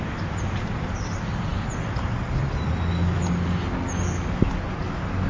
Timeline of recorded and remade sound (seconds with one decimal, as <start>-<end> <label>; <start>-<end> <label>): 0.0-5.3 recorded